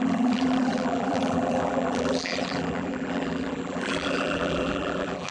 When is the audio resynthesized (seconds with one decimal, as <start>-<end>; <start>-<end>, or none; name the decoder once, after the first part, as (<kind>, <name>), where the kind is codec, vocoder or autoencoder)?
0.0-5.3 (vocoder, BigVGAN v2)